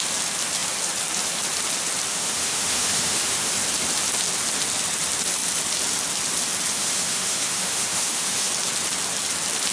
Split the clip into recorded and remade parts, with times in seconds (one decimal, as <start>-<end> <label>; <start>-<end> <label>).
0.0-2.1 recorded; 2.1-3.5 remade; 3.5-6.7 recorded; 6.7-8.5 remade; 8.5-9.7 recorded